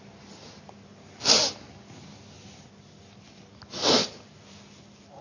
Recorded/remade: recorded